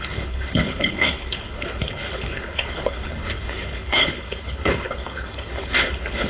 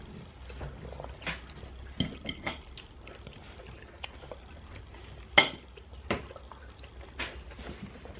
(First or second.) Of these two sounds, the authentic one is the second